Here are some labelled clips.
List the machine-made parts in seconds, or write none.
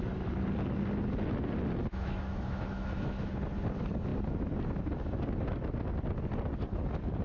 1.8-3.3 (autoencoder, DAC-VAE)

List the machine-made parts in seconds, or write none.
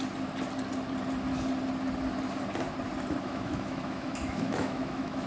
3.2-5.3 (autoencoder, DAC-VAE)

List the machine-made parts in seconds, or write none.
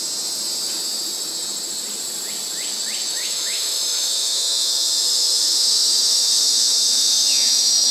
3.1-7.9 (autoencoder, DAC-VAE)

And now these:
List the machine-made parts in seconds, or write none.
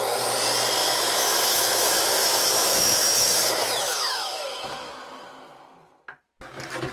0.8-4.9 (autoencoder, DAC-VAE)